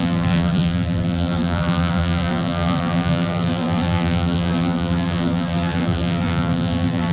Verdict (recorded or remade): remade